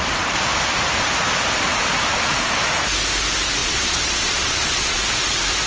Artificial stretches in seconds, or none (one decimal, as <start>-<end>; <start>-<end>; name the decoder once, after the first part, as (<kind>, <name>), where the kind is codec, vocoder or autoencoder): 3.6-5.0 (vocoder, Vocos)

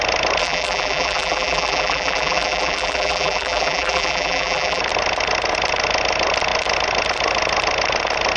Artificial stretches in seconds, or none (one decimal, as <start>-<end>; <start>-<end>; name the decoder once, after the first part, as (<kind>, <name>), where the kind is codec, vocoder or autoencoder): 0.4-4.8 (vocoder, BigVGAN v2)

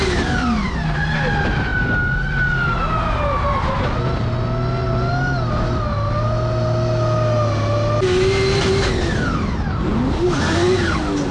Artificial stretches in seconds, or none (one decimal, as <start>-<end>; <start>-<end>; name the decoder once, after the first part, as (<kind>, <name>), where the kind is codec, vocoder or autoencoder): none